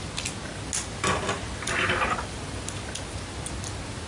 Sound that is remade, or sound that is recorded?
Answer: recorded